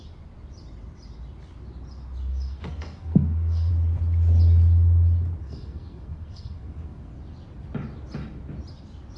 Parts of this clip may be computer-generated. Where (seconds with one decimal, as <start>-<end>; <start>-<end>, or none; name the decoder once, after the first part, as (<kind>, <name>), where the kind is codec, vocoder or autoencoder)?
2.3-3.7 (codec, SNAC); 5.4-7.1